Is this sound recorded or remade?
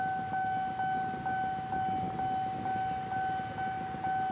recorded